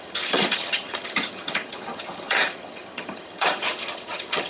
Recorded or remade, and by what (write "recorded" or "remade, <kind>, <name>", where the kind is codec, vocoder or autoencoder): remade, vocoder, HiFi-GAN